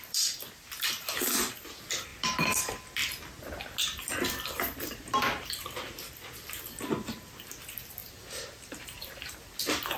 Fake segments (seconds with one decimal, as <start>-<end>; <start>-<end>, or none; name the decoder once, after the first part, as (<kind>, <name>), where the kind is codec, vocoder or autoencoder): 8.0-9.3 (vocoder, BigVGAN v2)